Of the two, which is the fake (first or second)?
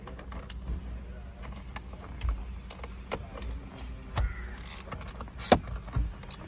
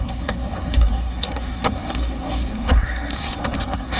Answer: second